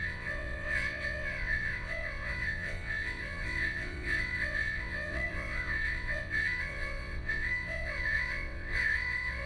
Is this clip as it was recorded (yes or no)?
no